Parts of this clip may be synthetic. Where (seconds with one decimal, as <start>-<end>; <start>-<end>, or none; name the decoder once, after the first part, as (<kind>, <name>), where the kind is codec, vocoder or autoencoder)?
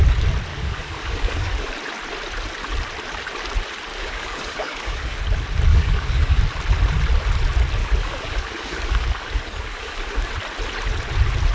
0.5-1.7 (codec, DAC); 3.9-5.2; 5.7-6.4; 7.8-10.3